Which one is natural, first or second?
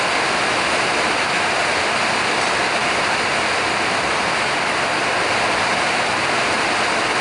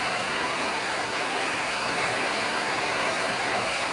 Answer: first